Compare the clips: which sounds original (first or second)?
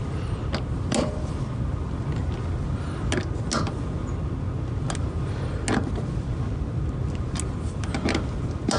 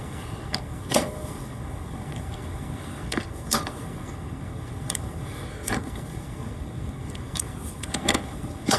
first